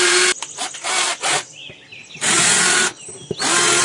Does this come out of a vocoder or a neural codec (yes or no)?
no